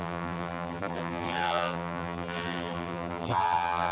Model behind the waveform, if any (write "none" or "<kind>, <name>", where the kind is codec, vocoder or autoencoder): vocoder, BigVGAN v2